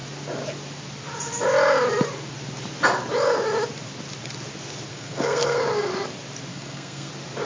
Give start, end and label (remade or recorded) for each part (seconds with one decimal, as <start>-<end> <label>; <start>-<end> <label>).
0.0-4.9 recorded; 4.9-5.6 remade; 5.6-6.5 recorded; 6.5-7.1 remade; 7.1-7.5 recorded